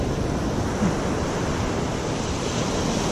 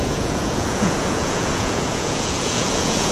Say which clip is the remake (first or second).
second